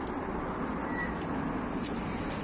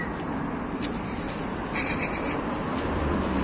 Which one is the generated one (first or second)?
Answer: second